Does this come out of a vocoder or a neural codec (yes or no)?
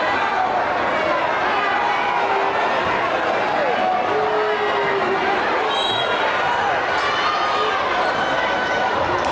no